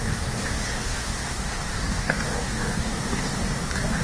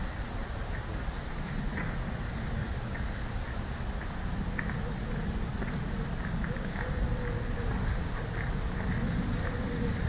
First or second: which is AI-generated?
first